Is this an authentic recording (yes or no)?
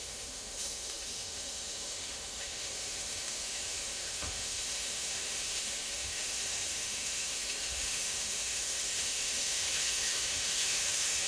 no